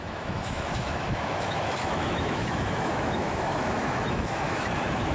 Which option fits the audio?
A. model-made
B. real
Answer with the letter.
A